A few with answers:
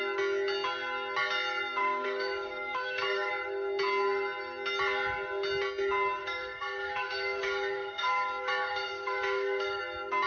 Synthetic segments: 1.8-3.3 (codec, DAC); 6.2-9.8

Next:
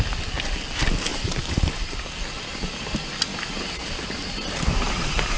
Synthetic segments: 1.1-2.0 (vocoder, BigVGAN v2); 3.3-5.4

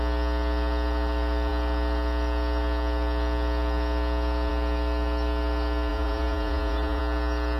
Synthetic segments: 5.9-7.0 (vocoder, Vocos)

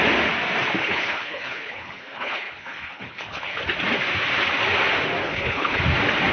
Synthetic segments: 0.8-3.6 (codec, HILCodec); 5.2-5.8